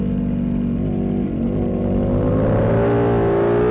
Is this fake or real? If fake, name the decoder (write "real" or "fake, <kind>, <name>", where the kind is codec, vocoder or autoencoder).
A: real